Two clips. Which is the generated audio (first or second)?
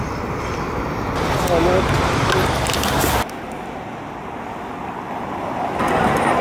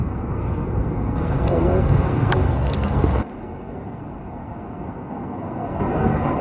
second